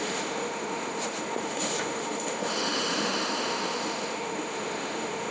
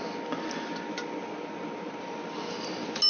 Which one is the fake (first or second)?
first